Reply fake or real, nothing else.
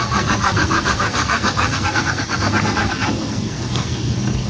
fake